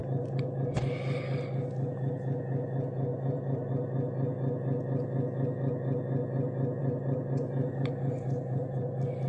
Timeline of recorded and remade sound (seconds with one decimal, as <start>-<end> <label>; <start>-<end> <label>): 0.0-0.8 remade; 0.8-3.1 recorded; 3.1-3.7 remade; 3.7-6.8 recorded; 6.8-8.8 remade; 8.8-9.3 recorded